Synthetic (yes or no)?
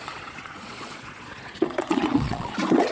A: yes